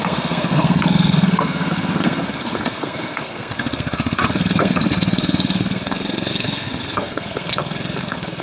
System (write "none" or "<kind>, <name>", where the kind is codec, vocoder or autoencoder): codec, SNAC